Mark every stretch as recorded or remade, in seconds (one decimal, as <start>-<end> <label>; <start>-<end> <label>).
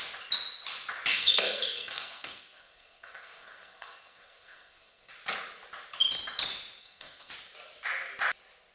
0.0-1.1 recorded; 1.1-5.1 remade; 5.1-6.8 recorded; 6.8-7.3 remade; 7.3-8.7 recorded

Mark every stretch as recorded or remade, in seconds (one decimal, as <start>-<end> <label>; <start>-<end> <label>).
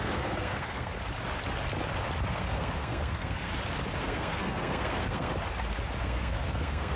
0.0-0.9 remade; 0.9-2.3 recorded; 2.3-3.5 remade; 3.5-4.0 recorded; 4.0-5.3 remade; 5.3-6.0 recorded; 6.0-7.0 remade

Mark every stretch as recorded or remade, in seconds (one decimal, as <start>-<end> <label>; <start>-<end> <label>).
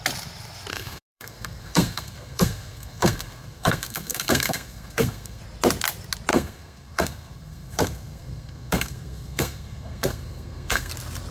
0.0-0.7 recorded; 0.7-5.4 remade; 5.4-6.3 recorded; 6.3-10.9 remade; 10.9-11.3 recorded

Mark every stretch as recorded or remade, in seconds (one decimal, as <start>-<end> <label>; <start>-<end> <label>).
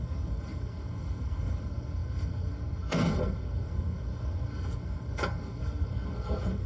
0.0-6.7 remade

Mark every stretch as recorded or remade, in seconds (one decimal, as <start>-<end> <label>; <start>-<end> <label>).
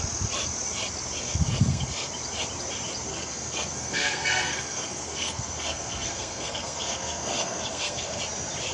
0.0-1.2 recorded; 1.2-2.1 remade; 2.1-3.1 recorded; 3.1-8.2 remade; 8.2-8.7 recorded